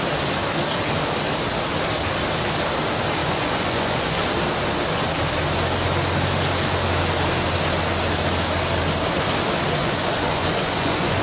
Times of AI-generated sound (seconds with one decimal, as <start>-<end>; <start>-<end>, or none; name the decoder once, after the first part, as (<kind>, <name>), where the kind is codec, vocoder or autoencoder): 3.2-4.3 (vocoder, Vocos); 9.8-11.2